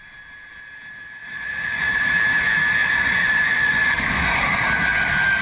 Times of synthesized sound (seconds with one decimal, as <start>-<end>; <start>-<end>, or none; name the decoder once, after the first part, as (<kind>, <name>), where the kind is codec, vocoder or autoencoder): 1.2-2.1 (vocoder, Vocos); 2.8-4.4